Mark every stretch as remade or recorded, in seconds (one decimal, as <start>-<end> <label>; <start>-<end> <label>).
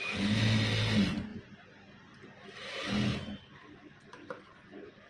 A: 0.0-5.1 recorded